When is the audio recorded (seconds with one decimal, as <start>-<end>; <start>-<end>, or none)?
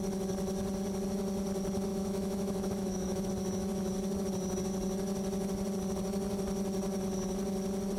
0.0-1.9; 3.3-8.0